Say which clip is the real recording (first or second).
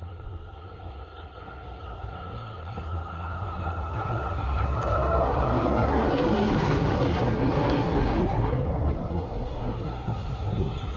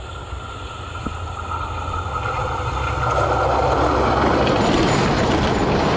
second